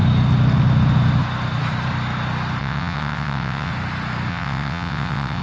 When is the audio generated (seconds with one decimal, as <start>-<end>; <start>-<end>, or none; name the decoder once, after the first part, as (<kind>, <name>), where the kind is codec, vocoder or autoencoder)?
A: 2.6-3.7 (vocoder, WaveNeXt); 4.3-5.4